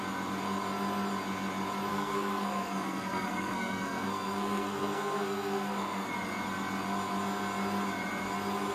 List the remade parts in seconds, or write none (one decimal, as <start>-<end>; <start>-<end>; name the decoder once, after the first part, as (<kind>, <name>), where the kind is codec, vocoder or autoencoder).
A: 1.9-6.1 (codec, SNAC)